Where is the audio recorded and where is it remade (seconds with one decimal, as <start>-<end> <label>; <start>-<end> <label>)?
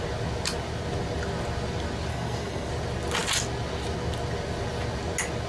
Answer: 0.0-2.1 recorded; 2.1-2.7 remade; 2.7-5.5 recorded